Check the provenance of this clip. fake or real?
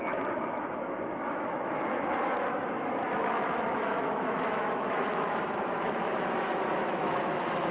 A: fake